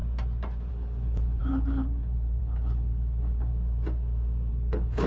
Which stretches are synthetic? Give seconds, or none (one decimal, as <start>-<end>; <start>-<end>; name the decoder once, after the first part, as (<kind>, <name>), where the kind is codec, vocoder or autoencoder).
0.7-3.5 (codec, HILCodec); 4.5-5.1